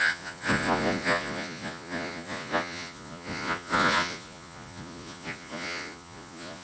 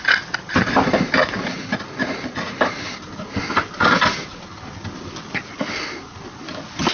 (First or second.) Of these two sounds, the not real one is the first